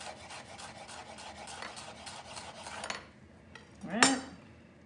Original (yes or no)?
yes